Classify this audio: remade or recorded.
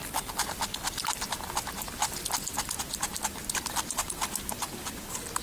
recorded